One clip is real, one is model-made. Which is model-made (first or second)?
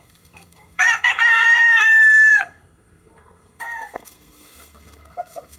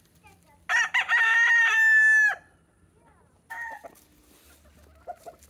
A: first